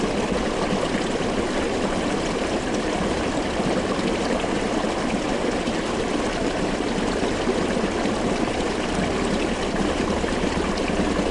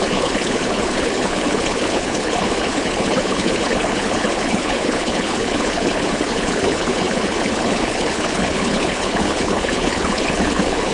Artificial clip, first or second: second